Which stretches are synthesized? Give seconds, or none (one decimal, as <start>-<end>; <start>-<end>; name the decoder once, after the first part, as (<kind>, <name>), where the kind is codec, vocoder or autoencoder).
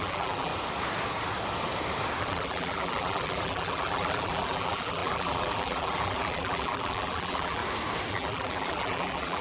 0.0-0.5 (vocoder, BigVGAN v2); 2.2-7.6; 8.1-9.4